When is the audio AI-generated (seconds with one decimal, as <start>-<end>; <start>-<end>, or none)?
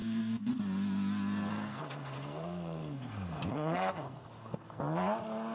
0.0-0.5; 1.5-4.8